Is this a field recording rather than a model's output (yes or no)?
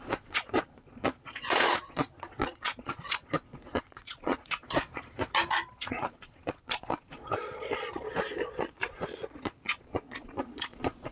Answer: no